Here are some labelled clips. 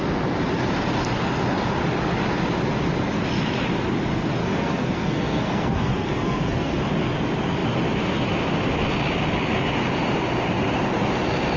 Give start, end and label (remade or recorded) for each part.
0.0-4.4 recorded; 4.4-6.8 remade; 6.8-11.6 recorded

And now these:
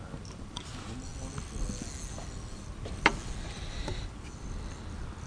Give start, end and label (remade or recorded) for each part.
0.0-5.3 recorded